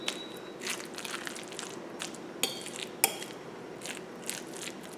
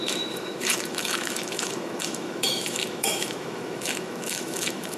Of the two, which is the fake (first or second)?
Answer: second